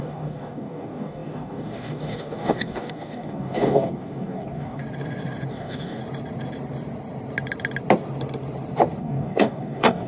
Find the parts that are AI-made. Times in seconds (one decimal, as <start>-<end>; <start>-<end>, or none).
0.0-4.8; 5.5-6.0; 9.0-10.1